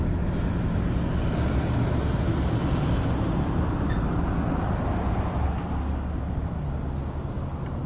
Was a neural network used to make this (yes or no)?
no